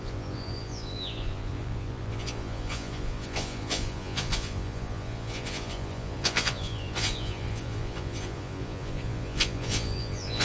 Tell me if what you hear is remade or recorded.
remade